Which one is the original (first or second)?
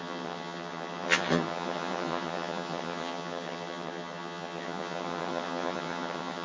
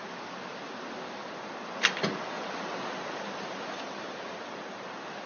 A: second